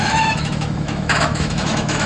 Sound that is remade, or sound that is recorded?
remade